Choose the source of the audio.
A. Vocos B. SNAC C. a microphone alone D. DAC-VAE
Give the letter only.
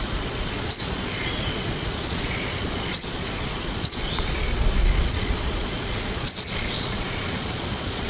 A